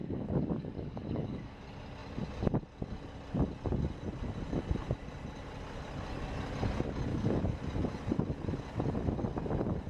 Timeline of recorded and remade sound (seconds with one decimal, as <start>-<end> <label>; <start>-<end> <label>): 0.0-1.6 remade; 1.6-7.1 recorded; 7.1-7.6 remade; 7.6-9.9 recorded